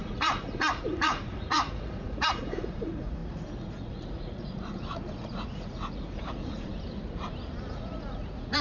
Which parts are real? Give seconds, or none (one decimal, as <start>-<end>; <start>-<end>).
6.7-7.7